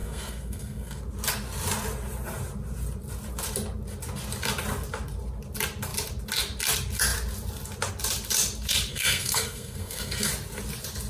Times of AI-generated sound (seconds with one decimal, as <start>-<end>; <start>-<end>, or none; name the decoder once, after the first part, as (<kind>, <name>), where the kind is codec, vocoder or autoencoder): 0.0-1.0 (codec, SNAC); 8.9-10.3